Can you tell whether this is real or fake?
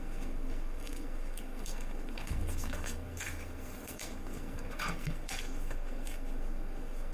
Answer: fake